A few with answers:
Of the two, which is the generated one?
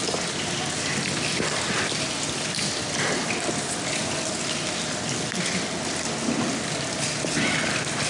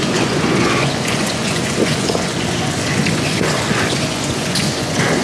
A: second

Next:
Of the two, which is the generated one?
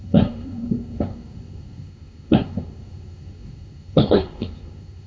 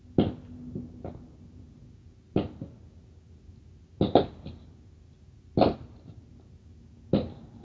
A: first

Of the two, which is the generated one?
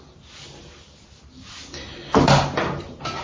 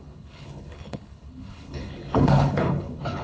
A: second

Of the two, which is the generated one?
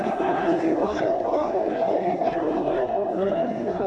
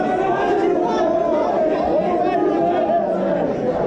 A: first